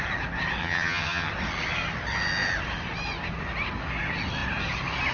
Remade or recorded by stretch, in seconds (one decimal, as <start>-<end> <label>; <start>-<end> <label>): 0.0-0.6 recorded; 0.6-1.3 remade; 1.3-5.1 recorded